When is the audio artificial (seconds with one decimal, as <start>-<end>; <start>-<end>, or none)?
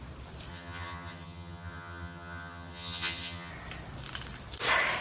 0.5-3.5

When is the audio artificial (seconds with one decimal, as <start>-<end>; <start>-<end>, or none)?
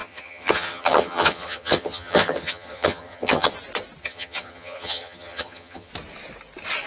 0.0-3.5; 4.0-5.9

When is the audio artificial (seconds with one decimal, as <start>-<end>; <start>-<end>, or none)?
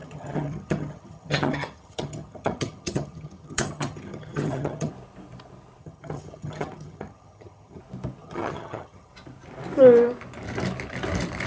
0.0-4.9; 5.8-7.8; 8.2-9.1